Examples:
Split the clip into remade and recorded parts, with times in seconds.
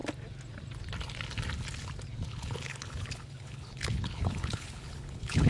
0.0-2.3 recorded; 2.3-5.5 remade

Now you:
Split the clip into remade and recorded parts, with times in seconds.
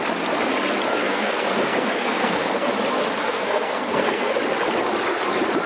0.0-1.0 recorded; 1.0-2.7 remade; 2.7-3.2 recorded; 3.2-4.3 remade; 4.3-5.7 recorded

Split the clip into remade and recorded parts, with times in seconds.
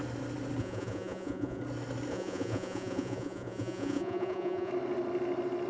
0.0-0.6 recorded; 0.6-1.6 remade; 1.6-2.1 recorded; 2.1-4.7 remade; 4.7-5.7 recorded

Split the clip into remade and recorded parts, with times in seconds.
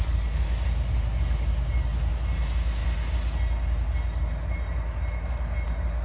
0.0-6.0 recorded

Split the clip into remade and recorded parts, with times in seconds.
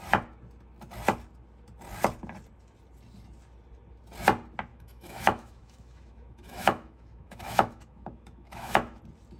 0.0-4.7 recorded; 4.7-9.0 remade; 9.0-9.4 recorded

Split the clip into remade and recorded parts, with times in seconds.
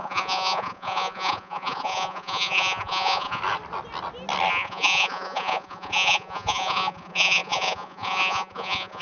0.0-3.4 remade; 3.4-4.5 recorded; 4.5-9.0 remade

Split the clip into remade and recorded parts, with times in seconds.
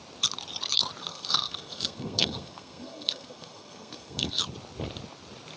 0.0-1.0 recorded; 1.0-4.4 remade; 4.4-5.6 recorded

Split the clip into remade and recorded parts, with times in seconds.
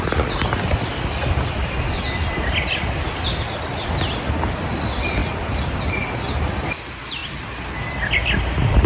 0.0-5.2 recorded; 5.2-5.9 remade; 5.9-7.2 recorded; 7.2-7.9 remade; 7.9-8.9 recorded